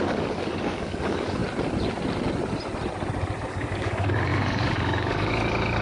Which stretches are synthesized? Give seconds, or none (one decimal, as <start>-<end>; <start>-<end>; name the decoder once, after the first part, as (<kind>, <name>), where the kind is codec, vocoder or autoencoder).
0.0-1.4 (codec, DAC); 3.5-5.8